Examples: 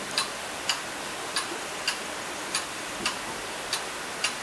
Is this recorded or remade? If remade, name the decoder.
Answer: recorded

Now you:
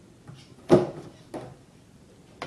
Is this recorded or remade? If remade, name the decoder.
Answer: recorded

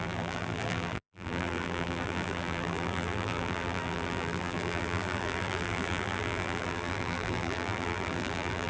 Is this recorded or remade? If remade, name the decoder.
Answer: remade, vocoder, BigVGAN v2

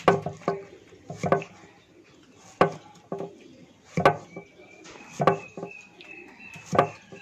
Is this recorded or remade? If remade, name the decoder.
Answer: recorded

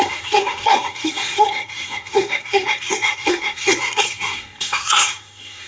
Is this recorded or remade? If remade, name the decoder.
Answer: remade, codec, SNAC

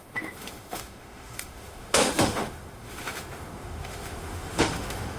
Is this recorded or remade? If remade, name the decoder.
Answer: remade, autoencoder, DAC-VAE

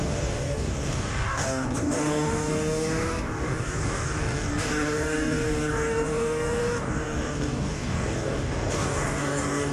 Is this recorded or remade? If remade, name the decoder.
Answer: remade, codec, DAC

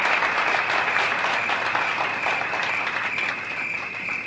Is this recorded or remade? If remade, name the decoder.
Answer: recorded